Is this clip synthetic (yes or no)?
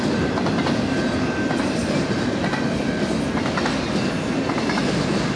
no